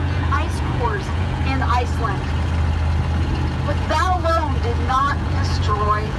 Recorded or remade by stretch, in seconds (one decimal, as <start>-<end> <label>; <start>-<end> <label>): 0.0-1.4 remade; 1.4-3.7 recorded; 3.7-6.2 remade